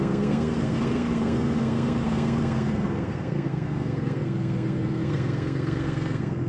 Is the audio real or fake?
fake